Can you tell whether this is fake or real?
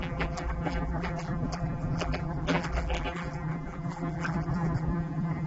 fake